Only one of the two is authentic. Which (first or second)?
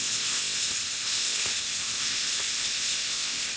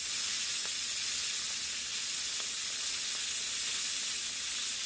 second